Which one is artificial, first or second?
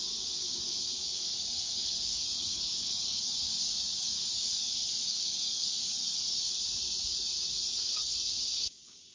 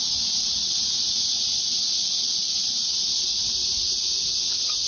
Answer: first